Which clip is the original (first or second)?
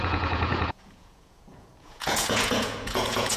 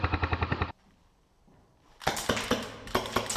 second